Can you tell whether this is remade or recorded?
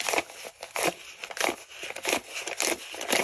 recorded